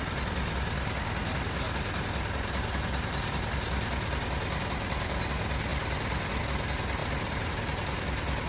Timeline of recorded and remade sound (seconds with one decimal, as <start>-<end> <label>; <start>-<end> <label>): 0.0-5.7 recorded; 5.7-6.4 remade; 6.4-7.0 recorded; 7.0-7.5 remade; 7.5-8.5 recorded